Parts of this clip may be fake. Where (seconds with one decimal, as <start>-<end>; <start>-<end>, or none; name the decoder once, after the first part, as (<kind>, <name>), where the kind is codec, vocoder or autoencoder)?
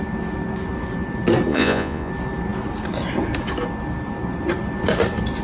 1.5-2.1 (vocoder, Vocos)